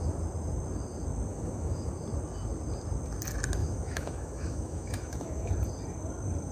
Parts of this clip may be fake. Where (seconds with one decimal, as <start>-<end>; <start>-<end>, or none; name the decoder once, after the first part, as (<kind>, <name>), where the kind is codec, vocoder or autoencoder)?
1.3-1.9 (autoencoder, DAC-VAE); 3.6-5.5